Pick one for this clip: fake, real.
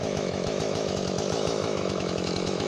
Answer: fake